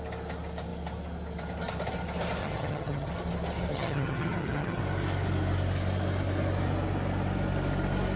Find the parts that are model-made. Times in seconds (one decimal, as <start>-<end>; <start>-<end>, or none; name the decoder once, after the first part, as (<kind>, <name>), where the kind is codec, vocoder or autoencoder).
2.4-3.1 (vocoder, HiFi-GAN); 3.7-4.8